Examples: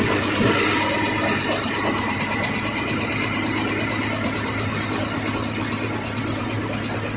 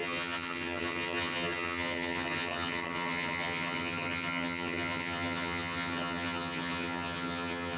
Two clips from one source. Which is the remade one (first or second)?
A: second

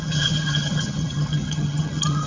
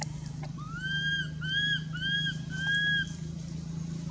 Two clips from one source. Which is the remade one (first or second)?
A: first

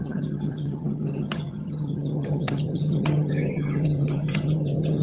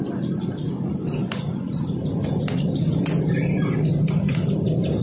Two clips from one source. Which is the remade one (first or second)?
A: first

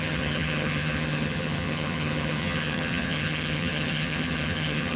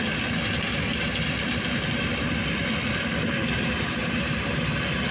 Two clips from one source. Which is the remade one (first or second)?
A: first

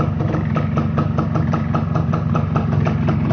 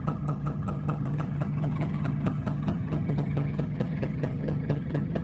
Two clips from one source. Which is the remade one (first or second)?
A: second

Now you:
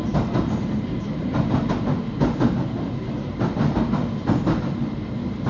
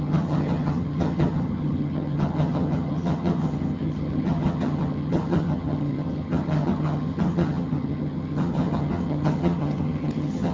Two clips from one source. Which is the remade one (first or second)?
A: second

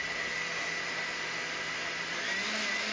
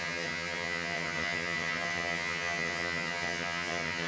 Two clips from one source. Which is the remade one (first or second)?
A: second